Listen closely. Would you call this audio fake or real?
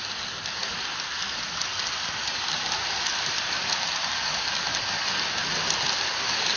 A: real